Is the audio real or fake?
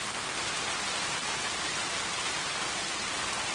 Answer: real